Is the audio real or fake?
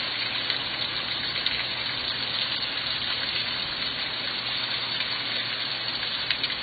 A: real